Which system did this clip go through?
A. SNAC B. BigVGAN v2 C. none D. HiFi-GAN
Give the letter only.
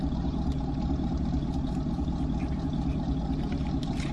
B